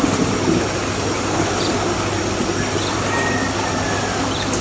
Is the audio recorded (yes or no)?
yes